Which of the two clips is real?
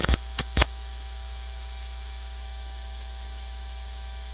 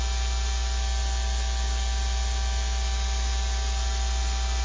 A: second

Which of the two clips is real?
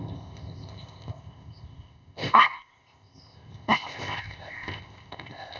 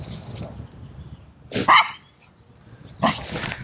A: second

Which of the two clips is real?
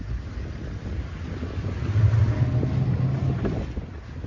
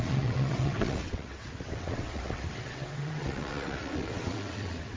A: first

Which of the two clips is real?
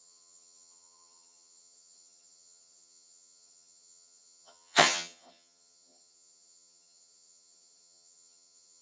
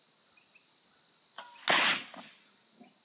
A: second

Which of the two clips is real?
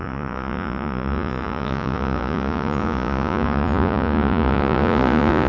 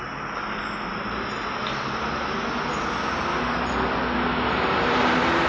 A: second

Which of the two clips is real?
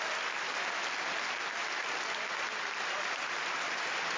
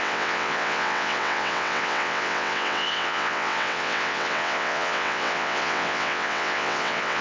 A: first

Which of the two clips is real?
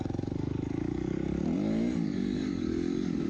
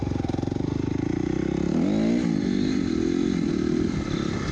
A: second